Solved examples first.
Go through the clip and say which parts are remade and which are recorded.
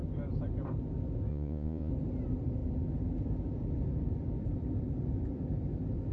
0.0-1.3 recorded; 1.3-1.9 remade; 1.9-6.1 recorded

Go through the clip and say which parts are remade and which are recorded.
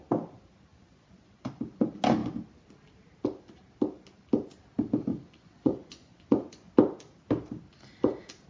0.0-0.7 recorded; 0.7-1.5 remade; 1.5-5.1 recorded; 5.1-6.7 remade; 6.7-8.5 recorded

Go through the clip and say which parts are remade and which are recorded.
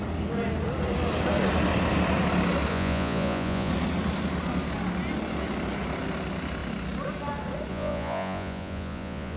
0.0-2.7 recorded; 2.7-3.7 remade; 3.7-7.7 recorded; 7.7-9.4 remade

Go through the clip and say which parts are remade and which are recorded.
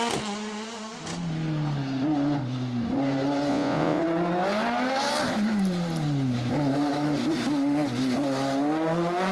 0.0-3.5 recorded; 3.5-4.0 remade; 4.0-9.3 recorded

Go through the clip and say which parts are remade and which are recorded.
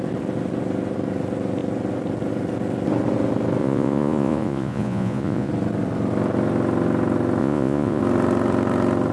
0.0-3.6 recorded; 3.6-5.5 remade; 5.5-7.4 recorded; 7.4-8.0 remade; 8.0-9.1 recorded